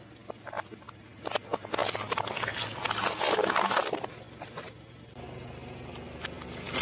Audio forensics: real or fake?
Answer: real